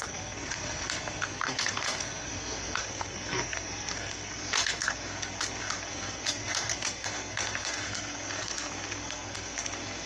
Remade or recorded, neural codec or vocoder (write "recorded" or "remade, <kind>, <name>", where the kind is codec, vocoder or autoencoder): remade, codec, SNAC